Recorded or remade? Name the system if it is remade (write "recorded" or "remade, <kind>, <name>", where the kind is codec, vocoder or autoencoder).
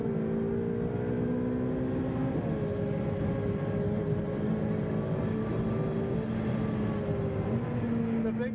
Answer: recorded